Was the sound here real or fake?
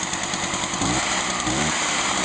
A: fake